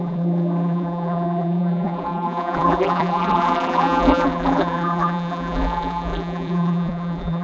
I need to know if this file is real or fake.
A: fake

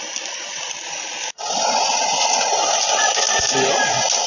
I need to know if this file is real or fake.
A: real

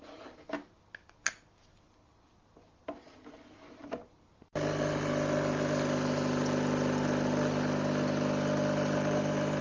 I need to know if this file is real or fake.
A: real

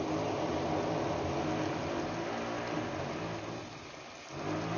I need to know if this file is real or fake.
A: real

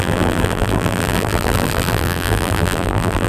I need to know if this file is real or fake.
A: fake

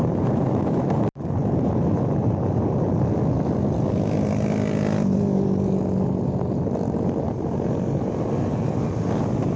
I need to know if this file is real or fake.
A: real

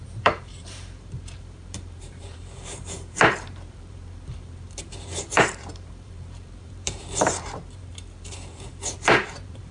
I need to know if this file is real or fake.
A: fake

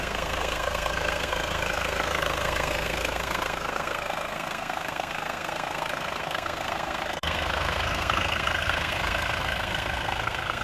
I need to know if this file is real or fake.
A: fake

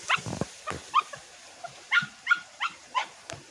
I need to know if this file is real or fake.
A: fake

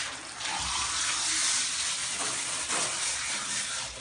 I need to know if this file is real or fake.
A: real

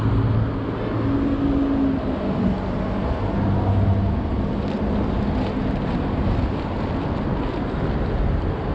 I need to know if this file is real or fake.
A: real